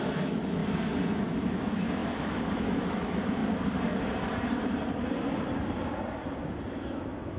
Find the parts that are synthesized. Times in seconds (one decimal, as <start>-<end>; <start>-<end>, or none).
0.0-0.6; 1.5-3.4; 6.7-7.4